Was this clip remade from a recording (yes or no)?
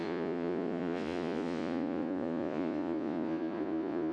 yes